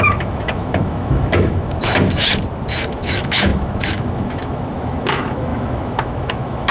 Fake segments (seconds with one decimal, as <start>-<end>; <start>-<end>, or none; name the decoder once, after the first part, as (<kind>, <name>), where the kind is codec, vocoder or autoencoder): 0.0-2.3 (autoencoder, DAC-VAE); 2.9-6.7

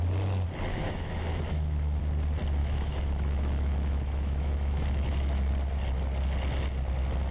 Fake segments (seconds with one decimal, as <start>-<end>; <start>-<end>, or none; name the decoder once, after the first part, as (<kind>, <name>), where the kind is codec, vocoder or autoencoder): 0.7-2.0 (autoencoder, DAC-VAE); 2.6-5.5

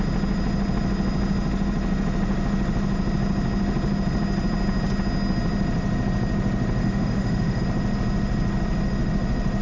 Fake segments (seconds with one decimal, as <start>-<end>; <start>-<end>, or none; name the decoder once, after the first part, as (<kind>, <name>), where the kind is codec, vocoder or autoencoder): 6.8-7.6 (autoencoder, DAC-VAE)